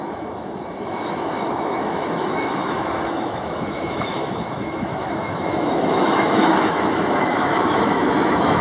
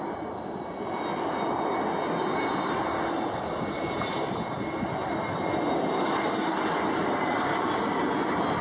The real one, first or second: second